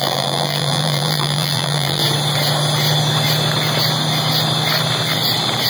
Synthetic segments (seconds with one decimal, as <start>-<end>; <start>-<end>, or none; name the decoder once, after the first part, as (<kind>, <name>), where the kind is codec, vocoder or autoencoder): 0.0-2.0 (vocoder, BigVGAN v2)